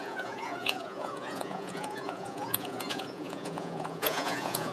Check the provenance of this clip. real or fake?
fake